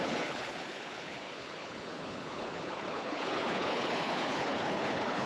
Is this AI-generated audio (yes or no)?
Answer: yes